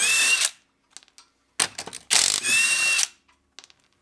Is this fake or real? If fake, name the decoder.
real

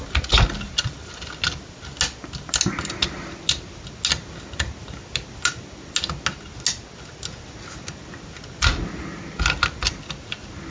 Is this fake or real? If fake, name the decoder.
real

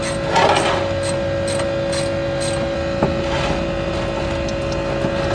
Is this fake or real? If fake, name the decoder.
real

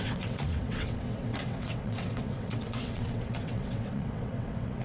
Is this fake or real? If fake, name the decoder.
fake, vocoder, WaveNeXt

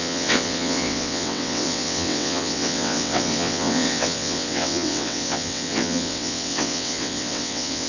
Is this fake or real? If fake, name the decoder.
fake, vocoder, WaveNeXt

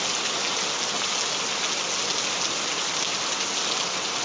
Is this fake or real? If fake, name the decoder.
real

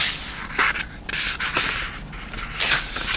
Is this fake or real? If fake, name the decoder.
real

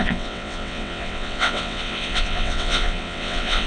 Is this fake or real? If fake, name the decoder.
fake, vocoder, WaveNeXt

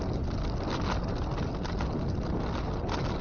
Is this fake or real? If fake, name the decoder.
real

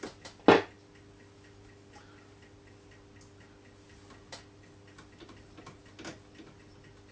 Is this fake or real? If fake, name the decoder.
real